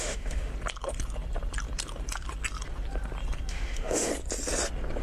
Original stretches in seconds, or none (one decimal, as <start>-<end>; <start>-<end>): 0.5-3.5; 4.1-5.0